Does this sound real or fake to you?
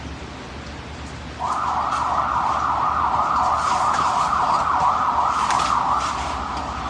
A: real